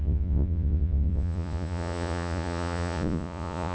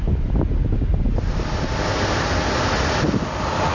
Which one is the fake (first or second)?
first